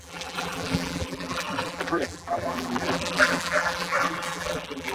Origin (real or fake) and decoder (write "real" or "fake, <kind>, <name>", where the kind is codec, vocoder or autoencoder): fake, vocoder, BigVGAN v2